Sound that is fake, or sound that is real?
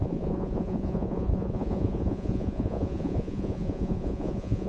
fake